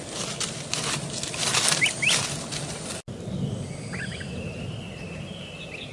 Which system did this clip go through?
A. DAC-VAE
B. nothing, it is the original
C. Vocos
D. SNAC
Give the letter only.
B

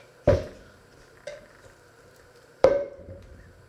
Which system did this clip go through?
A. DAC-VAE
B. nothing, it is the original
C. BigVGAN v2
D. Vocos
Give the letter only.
C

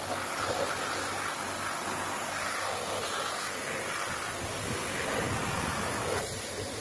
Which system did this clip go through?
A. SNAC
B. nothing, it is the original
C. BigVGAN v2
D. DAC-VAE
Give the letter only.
B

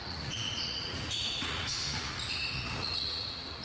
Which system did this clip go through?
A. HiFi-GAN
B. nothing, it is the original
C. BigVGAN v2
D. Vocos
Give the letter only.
D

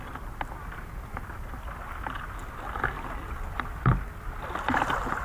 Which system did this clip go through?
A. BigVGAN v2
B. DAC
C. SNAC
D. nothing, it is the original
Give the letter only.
D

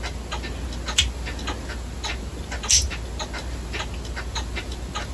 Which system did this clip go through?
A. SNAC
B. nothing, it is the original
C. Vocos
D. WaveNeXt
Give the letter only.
B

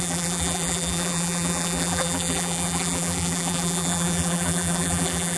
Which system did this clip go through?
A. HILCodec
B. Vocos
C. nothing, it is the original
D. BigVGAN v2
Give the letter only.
D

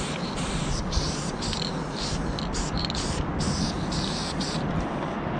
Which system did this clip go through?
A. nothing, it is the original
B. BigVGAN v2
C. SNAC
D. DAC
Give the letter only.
A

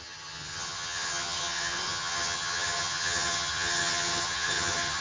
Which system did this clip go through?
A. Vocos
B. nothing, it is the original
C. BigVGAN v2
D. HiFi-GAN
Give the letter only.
D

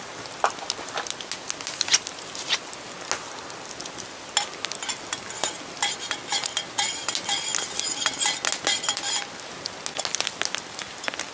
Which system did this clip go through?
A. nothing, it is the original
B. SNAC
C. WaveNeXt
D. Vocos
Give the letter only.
A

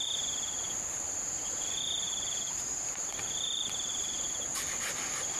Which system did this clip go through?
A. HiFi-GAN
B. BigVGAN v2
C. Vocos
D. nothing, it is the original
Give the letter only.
B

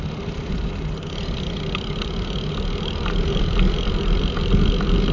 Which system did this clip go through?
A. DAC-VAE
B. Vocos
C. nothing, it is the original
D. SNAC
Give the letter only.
C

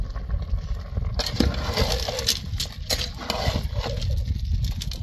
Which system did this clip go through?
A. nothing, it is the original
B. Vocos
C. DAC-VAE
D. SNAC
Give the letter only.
A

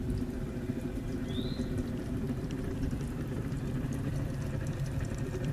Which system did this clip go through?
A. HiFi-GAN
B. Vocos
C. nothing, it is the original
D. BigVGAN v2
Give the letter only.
D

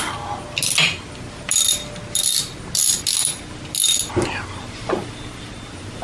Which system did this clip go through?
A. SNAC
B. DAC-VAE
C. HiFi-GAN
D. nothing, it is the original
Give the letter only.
D